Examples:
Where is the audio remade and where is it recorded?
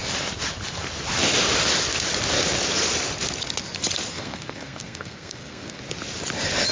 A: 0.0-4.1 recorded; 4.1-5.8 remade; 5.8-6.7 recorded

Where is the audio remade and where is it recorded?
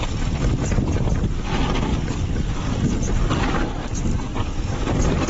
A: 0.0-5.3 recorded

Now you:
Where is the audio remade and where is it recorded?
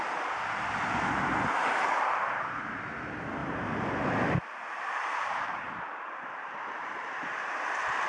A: 0.0-1.6 recorded; 1.6-2.6 remade; 2.6-3.4 recorded; 3.4-8.1 remade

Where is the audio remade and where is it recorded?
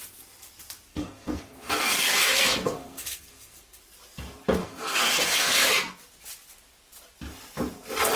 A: 0.0-0.9 recorded; 0.9-3.8 remade; 3.8-4.6 recorded; 4.6-5.7 remade; 5.7-8.2 recorded